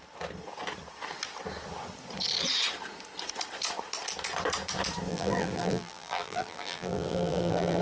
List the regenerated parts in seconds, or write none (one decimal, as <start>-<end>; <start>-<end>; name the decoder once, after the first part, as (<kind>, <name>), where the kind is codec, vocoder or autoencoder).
5.1-7.8 (vocoder, BigVGAN v2)